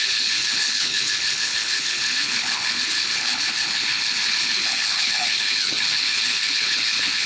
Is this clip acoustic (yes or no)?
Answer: no